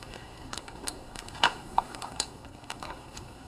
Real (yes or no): no